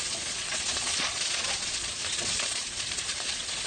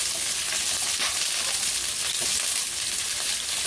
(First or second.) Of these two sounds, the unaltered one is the second